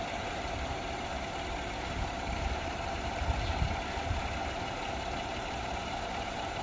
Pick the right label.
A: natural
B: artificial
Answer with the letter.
B